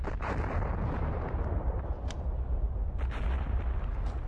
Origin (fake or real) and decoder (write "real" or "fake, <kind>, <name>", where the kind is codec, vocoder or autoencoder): real